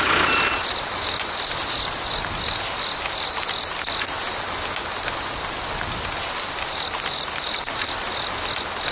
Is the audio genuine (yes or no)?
yes